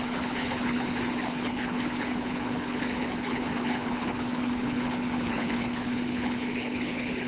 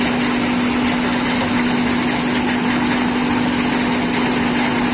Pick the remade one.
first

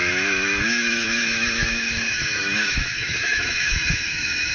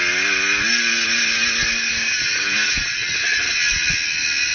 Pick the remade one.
first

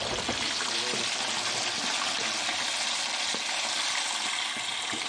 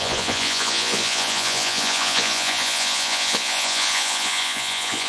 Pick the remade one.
second